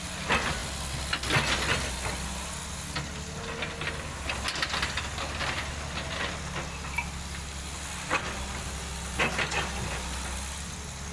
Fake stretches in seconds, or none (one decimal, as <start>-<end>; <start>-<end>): none